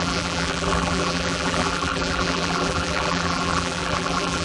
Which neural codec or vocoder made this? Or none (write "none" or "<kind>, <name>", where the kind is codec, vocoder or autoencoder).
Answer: vocoder, BigVGAN v2